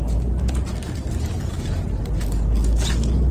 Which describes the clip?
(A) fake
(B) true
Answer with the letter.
B